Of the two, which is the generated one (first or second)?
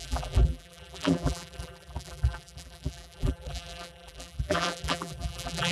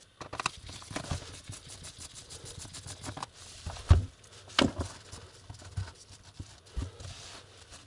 first